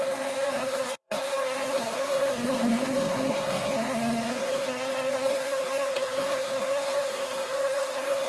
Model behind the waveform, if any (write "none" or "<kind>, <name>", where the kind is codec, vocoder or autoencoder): codec, SNAC